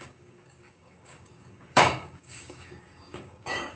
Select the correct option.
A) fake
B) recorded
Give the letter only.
A